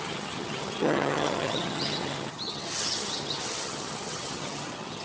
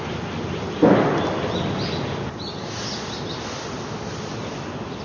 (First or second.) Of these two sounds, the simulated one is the first